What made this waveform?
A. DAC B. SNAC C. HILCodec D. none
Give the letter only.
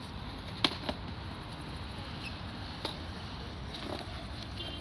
D